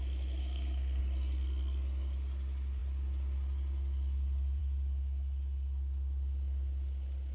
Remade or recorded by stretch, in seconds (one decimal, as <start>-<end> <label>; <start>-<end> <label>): 0.0-0.4 recorded; 0.4-1.0 remade; 1.0-7.3 recorded